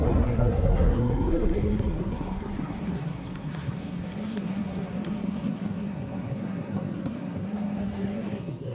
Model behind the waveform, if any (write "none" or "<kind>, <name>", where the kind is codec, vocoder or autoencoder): codec, SNAC